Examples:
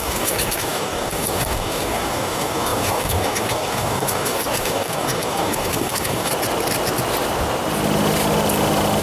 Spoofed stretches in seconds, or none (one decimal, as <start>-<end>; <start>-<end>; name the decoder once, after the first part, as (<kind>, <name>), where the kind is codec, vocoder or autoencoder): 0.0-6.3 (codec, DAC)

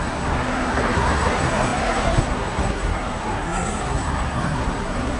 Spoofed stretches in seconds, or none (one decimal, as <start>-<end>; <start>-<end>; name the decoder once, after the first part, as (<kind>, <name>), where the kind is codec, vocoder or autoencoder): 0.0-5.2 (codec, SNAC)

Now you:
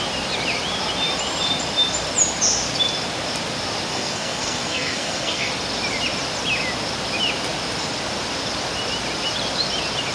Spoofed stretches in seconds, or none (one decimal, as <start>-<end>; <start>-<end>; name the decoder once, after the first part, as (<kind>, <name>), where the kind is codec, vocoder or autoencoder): 3.9-5.5 (codec, SNAC)

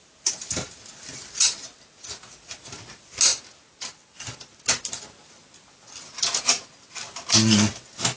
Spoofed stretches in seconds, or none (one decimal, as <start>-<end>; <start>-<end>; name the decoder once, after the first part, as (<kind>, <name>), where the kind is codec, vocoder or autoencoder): 0.0-0.8 (vocoder, BigVGAN v2)

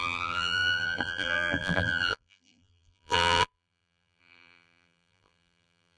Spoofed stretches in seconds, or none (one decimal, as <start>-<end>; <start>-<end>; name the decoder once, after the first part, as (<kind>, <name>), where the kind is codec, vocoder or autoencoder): 0.0-6.0 (vocoder, BigVGAN v2)

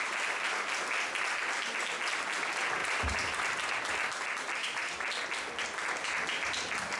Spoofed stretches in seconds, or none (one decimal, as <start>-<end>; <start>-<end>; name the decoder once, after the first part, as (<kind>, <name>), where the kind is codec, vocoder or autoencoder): 2.8-5.6 (vocoder, BigVGAN v2)